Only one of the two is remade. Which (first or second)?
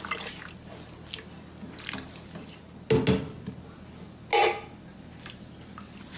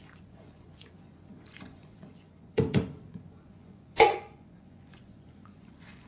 second